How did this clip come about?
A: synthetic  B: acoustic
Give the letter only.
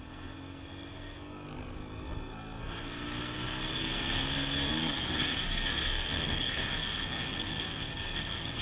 A